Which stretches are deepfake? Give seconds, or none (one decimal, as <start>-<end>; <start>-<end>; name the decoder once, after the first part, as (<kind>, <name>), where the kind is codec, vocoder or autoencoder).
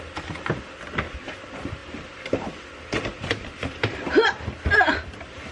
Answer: none